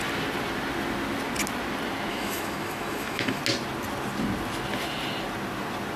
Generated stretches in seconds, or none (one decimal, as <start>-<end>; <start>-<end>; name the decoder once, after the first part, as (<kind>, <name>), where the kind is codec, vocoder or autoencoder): 2.1-3.4 (autoencoder, DAC-VAE)